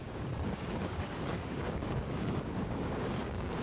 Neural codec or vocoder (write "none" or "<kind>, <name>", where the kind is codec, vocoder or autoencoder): codec, DAC